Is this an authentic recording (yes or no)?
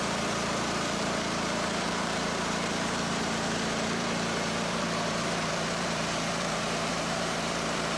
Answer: no